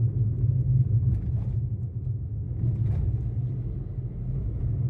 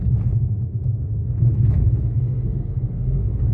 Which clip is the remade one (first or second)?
second